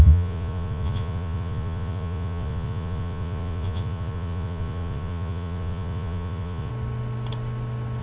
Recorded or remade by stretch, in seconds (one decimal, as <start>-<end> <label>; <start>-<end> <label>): 0.0-6.7 remade; 6.7-8.0 recorded